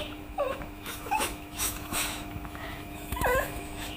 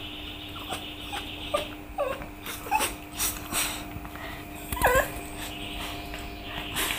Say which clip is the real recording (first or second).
second